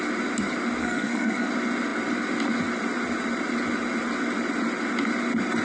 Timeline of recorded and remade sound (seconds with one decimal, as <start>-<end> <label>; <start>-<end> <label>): 0.0-0.8 recorded; 0.8-1.5 remade; 1.5-5.6 recorded